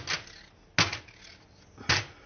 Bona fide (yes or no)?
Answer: yes